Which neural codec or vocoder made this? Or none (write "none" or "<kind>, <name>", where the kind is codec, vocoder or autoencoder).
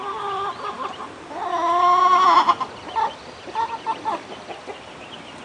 none